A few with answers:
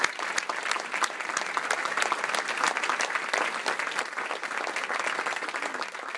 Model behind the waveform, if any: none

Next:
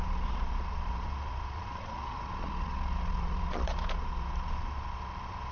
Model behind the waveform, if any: vocoder, Vocos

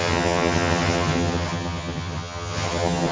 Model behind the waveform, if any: vocoder, HiFi-GAN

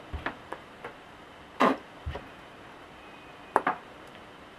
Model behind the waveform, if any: vocoder, BigVGAN v2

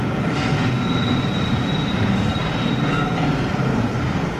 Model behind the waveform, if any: none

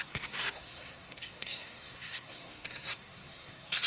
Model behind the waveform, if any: codec, SNAC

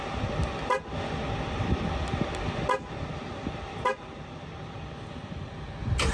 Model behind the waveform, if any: none